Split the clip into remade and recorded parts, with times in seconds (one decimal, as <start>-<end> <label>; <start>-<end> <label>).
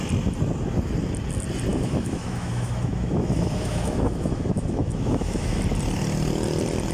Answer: 0.0-1.7 recorded; 1.7-5.6 remade; 5.6-6.9 recorded